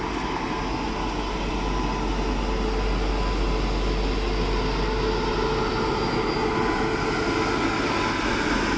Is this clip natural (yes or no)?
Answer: yes